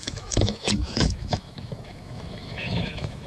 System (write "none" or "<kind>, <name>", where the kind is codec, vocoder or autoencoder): autoencoder, DAC-VAE